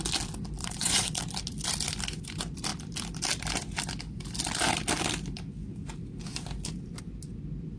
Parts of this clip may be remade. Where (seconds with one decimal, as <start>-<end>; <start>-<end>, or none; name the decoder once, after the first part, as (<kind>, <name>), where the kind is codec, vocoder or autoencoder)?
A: 0.6-1.2 (vocoder, WaveNeXt)